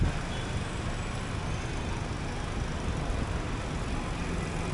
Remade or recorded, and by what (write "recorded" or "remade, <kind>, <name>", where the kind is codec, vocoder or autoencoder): recorded